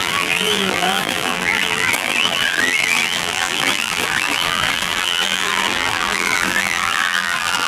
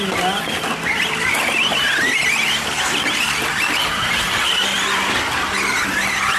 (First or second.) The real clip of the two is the second